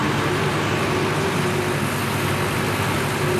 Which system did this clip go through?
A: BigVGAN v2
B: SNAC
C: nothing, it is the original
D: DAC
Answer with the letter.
C